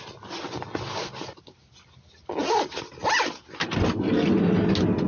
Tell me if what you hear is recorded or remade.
recorded